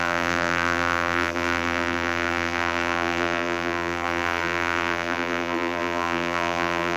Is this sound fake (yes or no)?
yes